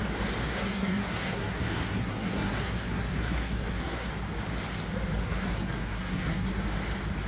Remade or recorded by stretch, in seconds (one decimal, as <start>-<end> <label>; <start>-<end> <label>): 0.0-0.4 recorded; 0.4-4.1 remade; 4.1-5.2 recorded; 5.2-6.5 remade; 6.5-7.3 recorded